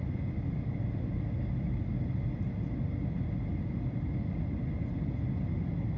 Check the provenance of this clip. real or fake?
real